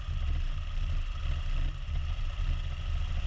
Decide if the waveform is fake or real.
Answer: real